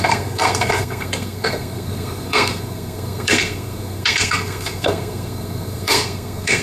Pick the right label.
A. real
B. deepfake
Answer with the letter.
B